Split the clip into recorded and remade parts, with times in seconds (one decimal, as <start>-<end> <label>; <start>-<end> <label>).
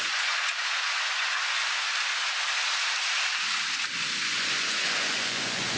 0.0-1.6 remade; 1.6-4.2 recorded; 4.2-5.8 remade